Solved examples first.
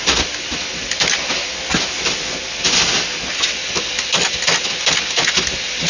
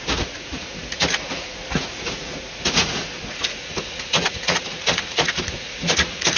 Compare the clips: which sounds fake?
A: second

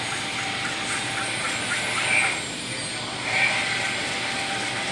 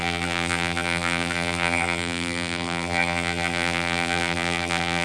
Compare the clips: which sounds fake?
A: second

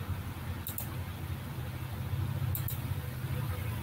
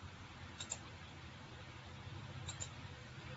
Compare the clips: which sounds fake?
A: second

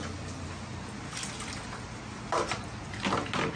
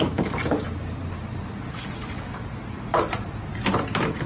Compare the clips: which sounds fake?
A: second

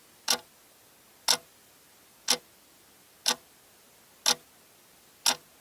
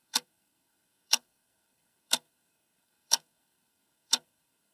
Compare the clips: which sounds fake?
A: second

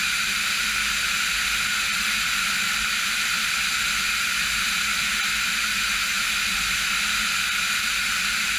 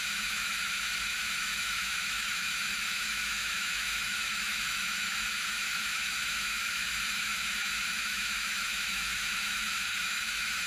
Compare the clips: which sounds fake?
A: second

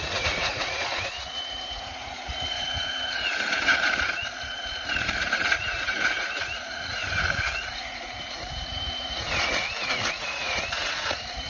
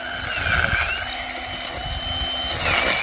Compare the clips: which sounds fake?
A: first